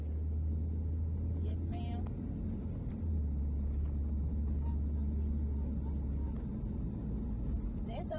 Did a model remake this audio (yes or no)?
no